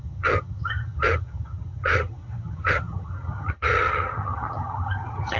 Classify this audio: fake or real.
fake